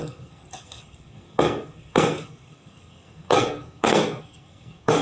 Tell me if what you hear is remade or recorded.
remade